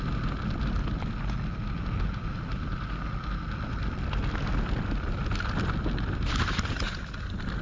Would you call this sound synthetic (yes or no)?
no